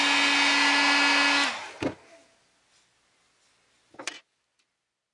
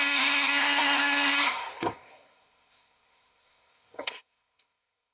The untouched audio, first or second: first